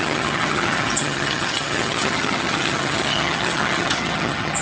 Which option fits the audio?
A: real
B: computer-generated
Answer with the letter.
B